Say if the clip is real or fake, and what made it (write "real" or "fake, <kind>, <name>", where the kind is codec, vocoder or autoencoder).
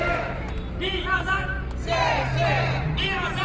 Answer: real